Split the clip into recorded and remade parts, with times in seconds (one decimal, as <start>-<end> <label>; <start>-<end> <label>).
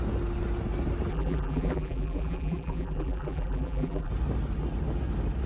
0.0-1.1 recorded; 1.1-4.1 remade; 4.1-5.5 recorded